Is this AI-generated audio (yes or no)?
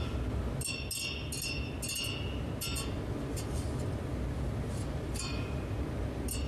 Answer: no